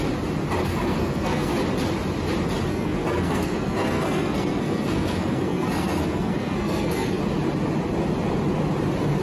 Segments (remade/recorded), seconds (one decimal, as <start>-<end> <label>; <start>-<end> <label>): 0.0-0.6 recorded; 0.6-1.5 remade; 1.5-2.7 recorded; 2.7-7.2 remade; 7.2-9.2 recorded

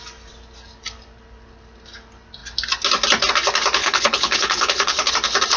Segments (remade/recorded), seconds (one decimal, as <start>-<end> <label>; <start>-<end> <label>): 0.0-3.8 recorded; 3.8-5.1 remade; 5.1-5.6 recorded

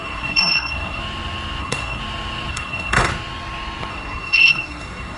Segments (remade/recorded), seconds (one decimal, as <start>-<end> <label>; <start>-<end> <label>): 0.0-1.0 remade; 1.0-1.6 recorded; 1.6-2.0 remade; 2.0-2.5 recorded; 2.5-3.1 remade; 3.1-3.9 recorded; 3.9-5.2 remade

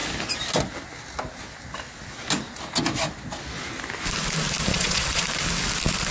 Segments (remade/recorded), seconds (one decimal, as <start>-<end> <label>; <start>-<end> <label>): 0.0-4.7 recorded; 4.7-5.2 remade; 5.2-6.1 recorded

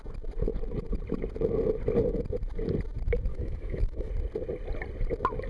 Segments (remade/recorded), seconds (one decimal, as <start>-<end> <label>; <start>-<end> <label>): 0.0-3.3 recorded; 3.3-4.1 remade; 4.1-5.5 recorded

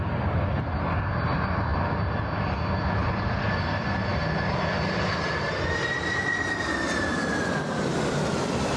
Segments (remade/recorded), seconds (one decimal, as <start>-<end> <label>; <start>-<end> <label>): 0.0-8.8 recorded

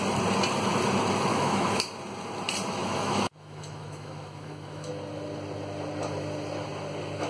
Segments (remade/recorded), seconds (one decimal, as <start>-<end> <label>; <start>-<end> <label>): 0.0-1.3 recorded; 1.3-1.8 remade; 1.8-2.8 recorded; 2.8-4.9 remade; 4.9-7.3 recorded

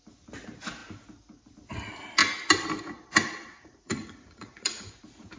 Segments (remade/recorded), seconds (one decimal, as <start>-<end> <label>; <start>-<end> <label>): 0.0-3.5 recorded; 3.5-4.9 remade; 4.9-5.4 recorded